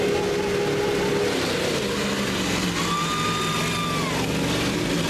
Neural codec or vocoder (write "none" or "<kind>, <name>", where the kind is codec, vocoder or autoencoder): none